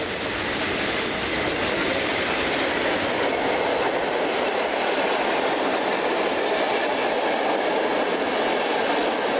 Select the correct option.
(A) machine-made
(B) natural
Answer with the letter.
B